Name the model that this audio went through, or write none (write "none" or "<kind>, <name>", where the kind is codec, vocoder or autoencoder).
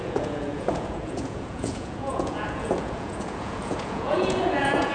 vocoder, Vocos